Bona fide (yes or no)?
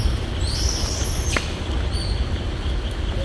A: yes